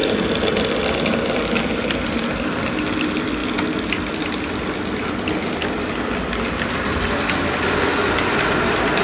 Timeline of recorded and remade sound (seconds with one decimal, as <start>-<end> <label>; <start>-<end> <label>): 0.0-9.0 recorded